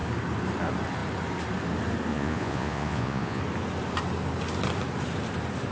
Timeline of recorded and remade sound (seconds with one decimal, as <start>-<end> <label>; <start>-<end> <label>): 0.0-2.1 recorded; 2.1-3.4 remade; 3.4-5.7 recorded